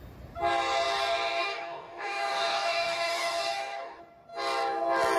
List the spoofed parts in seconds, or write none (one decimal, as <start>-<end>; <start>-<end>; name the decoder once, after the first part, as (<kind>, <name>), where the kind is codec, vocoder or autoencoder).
1.4-4.0 (codec, DAC)